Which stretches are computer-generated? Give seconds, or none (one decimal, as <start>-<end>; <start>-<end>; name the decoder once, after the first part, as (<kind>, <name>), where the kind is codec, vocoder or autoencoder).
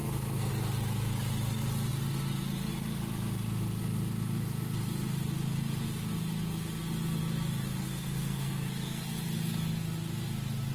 0.0-0.5 (codec, SNAC); 7.8-9.0